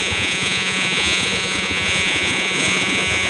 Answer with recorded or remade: remade